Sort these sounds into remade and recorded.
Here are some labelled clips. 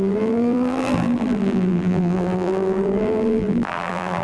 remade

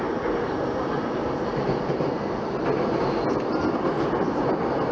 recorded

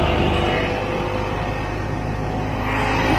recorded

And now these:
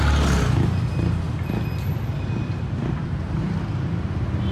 recorded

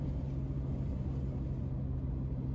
recorded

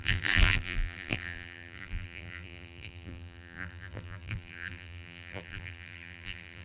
remade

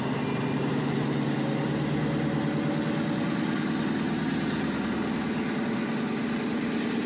recorded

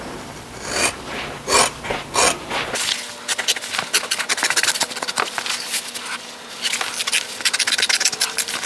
recorded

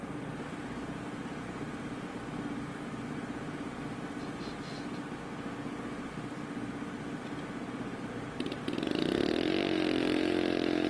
recorded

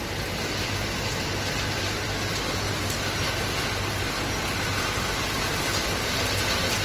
recorded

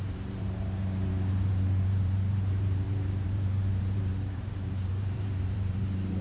remade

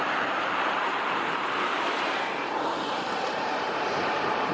remade